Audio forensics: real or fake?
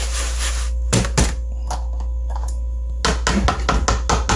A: real